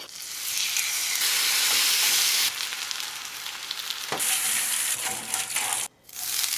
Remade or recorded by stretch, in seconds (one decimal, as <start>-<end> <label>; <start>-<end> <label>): 0.0-6.6 recorded